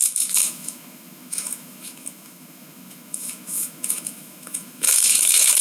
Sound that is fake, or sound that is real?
fake